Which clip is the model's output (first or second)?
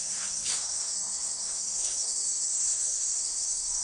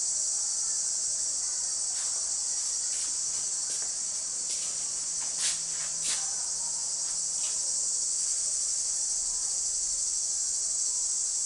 first